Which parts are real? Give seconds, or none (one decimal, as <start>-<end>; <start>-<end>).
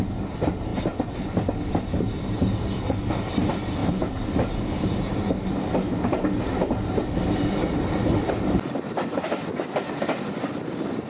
0.0-11.1